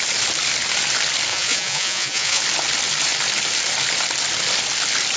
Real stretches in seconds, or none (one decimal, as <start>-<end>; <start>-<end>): 0.0-1.3; 2.4-5.2